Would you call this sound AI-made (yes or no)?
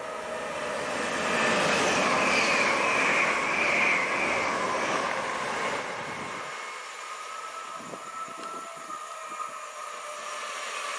no